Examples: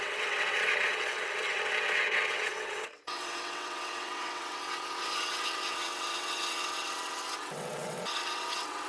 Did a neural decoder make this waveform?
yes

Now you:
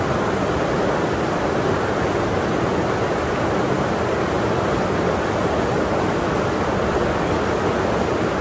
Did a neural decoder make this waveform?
no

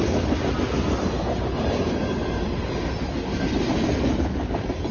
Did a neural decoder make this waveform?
no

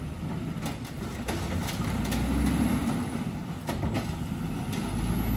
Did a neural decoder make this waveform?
no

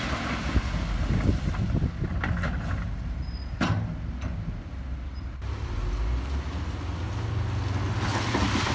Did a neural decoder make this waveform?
no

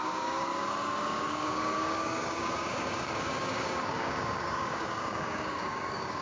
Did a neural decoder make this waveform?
yes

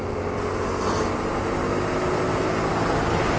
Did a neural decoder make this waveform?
no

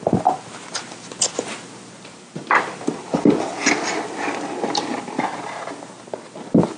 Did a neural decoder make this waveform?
no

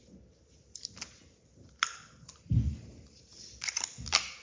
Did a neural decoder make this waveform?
no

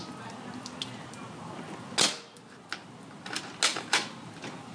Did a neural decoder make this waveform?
no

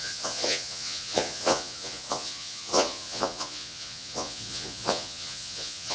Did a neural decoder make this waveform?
yes